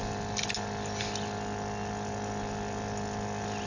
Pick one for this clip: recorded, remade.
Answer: recorded